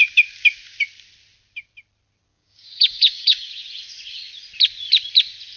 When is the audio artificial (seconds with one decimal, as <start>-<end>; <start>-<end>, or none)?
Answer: 2.3-3.5